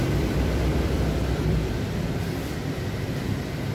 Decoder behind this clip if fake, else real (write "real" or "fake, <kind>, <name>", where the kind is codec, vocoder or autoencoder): fake, vocoder, BigVGAN v2